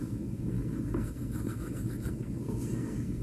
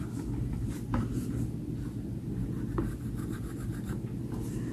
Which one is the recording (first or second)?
second